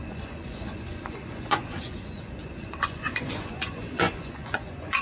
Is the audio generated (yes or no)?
yes